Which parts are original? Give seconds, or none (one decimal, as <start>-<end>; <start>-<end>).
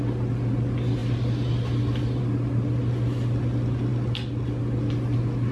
0.0-5.5